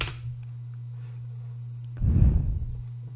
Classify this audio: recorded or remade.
recorded